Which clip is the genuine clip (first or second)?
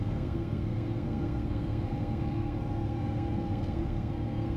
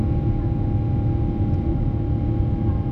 second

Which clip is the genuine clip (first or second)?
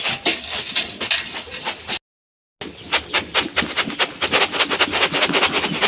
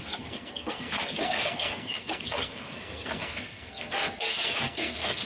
first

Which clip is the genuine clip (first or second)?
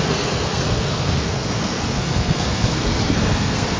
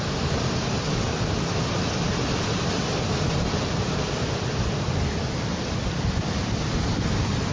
second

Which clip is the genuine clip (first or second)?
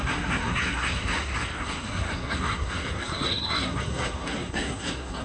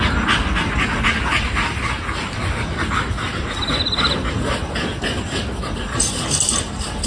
second